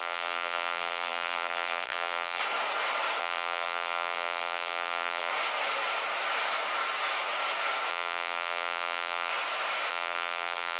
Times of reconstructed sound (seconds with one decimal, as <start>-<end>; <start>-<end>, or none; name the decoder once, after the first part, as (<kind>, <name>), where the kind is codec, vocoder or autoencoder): 0.0-2.4 (vocoder, BigVGAN v2); 3.2-5.3; 7.9-9.3; 9.9-10.8